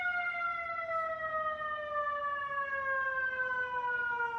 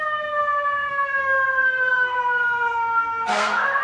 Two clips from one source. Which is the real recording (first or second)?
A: first